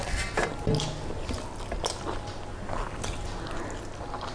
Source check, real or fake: real